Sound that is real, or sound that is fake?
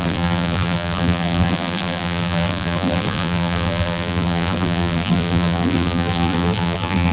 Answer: fake